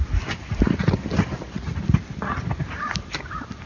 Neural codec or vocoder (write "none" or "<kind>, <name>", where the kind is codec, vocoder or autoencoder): none